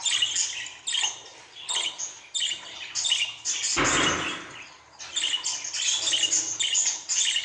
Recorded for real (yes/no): yes